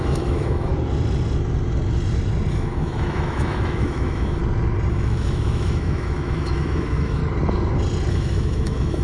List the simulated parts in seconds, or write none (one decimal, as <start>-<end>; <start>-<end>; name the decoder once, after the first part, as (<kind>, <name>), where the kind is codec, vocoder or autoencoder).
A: 0.0-0.7 (autoencoder, DAC-VAE); 2.5-4.4; 4.9-7.2; 8.1-9.0